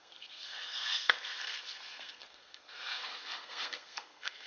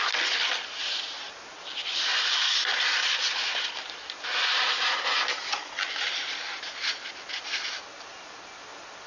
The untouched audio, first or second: second